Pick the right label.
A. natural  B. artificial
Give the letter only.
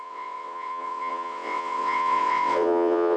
B